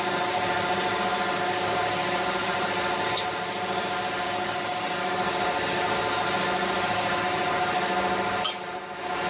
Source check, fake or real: real